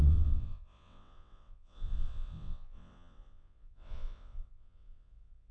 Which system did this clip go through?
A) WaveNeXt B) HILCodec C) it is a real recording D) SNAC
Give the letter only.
A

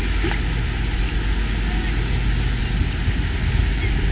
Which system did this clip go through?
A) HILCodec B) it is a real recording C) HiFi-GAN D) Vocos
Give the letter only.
B